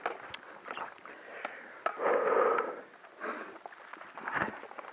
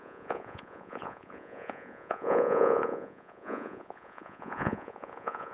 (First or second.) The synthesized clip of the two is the second